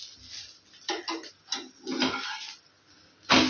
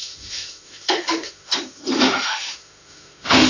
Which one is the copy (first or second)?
second